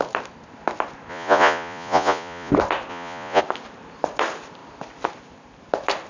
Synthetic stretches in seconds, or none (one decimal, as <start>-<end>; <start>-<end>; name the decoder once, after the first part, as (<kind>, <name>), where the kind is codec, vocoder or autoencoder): 1.1-2.5 (vocoder, Vocos); 2.9-3.4